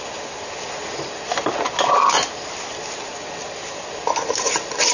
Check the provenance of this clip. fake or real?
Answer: real